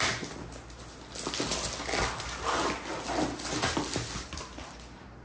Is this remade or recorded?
recorded